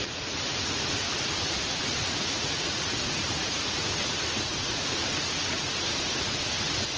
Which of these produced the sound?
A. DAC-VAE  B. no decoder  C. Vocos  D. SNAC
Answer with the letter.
C